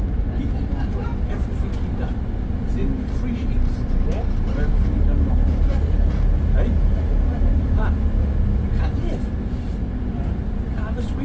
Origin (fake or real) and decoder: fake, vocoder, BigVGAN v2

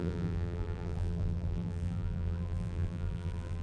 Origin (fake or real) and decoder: fake, vocoder, BigVGAN v2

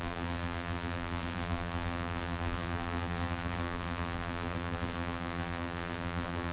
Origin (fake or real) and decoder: fake, vocoder, BigVGAN v2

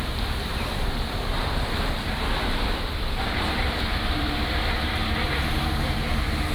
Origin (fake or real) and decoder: fake, vocoder, BigVGAN v2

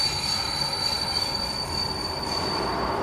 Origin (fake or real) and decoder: real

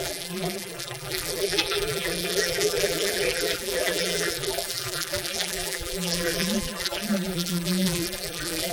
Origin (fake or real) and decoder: fake, vocoder, BigVGAN v2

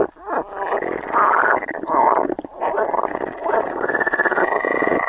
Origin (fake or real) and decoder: real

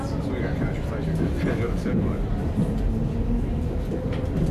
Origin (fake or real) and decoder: real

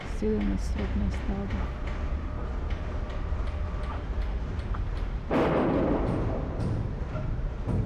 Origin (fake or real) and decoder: real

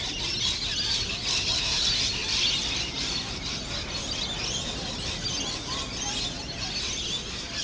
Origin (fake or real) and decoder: real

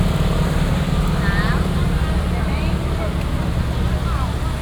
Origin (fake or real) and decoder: real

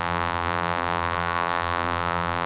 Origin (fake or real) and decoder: fake, vocoder, BigVGAN v2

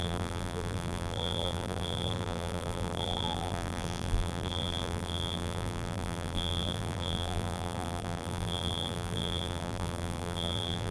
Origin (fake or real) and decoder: fake, vocoder, BigVGAN v2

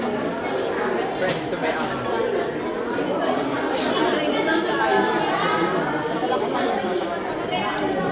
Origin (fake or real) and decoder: real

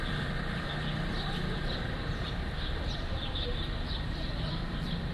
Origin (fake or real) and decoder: fake, vocoder, BigVGAN v2